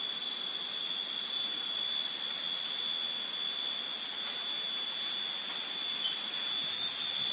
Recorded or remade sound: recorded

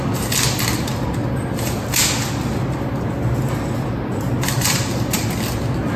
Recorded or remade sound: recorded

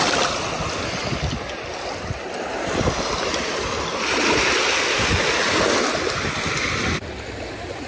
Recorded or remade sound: recorded